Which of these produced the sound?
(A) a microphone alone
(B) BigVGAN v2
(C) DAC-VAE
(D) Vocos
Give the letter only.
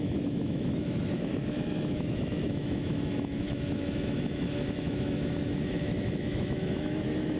C